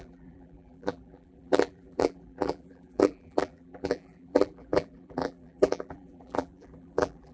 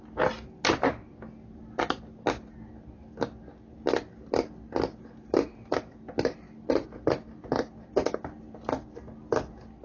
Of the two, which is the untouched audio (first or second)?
second